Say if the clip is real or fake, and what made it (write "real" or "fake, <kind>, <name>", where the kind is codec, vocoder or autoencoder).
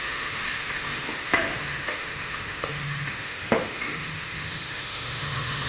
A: fake, autoencoder, DAC-VAE